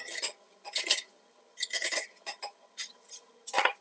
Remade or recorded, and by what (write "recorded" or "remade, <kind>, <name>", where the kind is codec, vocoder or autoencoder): remade, vocoder, HiFi-GAN